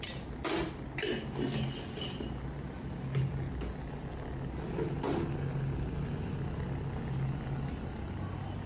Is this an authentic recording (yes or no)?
yes